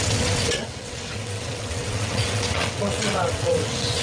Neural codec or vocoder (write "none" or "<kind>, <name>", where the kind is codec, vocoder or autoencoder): vocoder, WaveNeXt